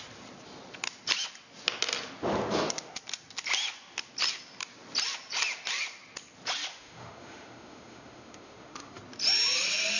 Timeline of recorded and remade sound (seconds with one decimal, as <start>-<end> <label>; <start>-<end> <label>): 0.0-6.7 recorded; 6.7-9.0 remade; 9.0-10.0 recorded